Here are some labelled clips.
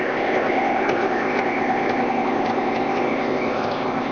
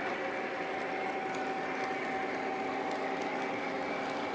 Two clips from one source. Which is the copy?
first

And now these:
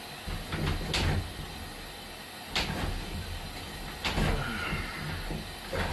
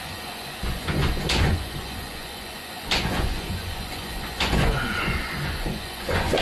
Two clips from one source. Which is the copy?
second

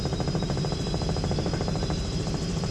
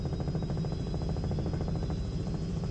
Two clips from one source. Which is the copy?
first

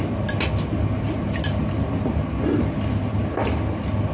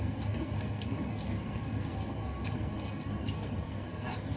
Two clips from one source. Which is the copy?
second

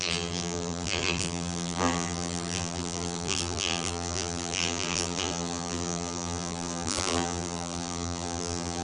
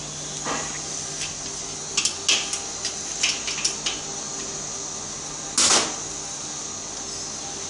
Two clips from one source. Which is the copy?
first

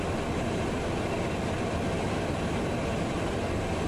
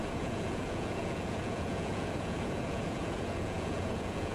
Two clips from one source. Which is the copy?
second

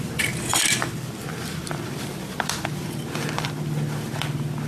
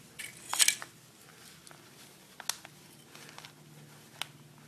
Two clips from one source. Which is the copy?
first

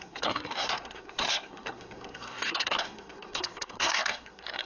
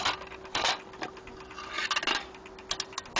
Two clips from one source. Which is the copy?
first